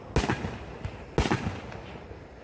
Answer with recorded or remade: recorded